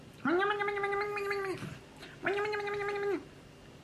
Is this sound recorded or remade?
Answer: recorded